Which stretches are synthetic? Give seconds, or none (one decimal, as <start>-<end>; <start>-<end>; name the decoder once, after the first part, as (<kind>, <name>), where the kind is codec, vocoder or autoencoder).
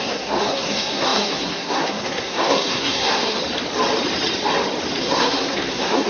0.0-3.4 (codec, SNAC); 5.0-6.1